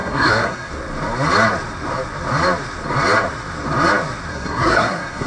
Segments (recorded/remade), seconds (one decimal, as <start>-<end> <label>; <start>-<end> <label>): 0.0-0.7 remade; 0.7-4.3 recorded; 4.3-5.3 remade